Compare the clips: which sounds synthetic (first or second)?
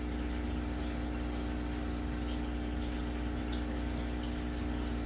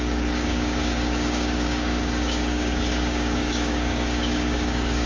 second